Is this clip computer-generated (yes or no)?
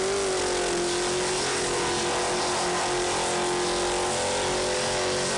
no